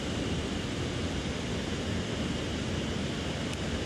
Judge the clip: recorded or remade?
recorded